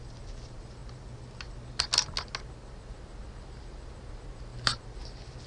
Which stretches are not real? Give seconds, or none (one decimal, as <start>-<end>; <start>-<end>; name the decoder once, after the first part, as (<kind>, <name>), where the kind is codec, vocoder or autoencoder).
none